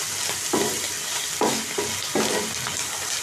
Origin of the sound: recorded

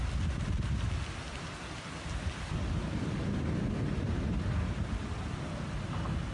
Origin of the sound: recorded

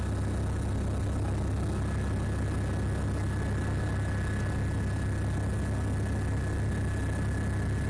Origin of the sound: recorded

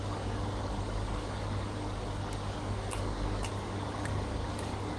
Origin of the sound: remade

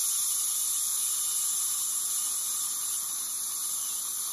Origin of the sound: recorded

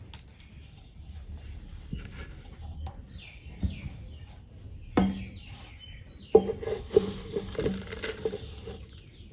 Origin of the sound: recorded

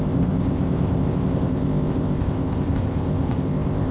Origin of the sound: remade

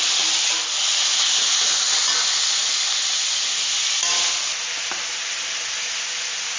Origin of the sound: recorded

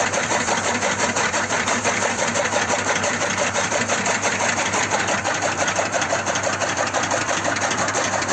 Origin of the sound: remade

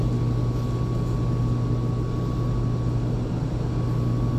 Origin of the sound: recorded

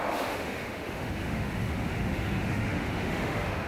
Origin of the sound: remade